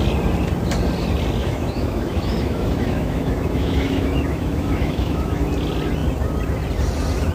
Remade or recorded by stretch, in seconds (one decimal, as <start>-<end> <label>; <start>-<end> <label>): 0.0-1.4 recorded; 1.4-5.5 remade; 5.5-7.3 recorded